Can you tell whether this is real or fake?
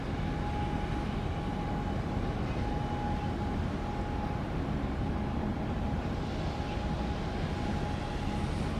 real